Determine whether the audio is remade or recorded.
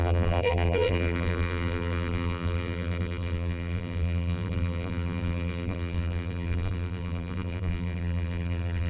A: remade